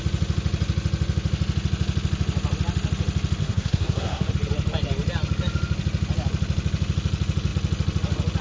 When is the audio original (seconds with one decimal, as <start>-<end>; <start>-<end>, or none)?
0.0-3.4; 4.3-8.4